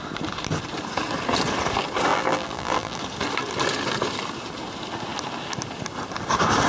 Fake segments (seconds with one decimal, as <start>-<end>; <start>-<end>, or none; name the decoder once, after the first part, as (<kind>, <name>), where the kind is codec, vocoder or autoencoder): 2.1-3.0 (vocoder, BigVGAN v2)